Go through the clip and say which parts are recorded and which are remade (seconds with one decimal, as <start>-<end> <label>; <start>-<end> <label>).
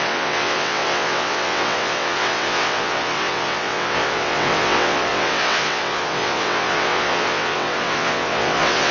0.0-8.9 remade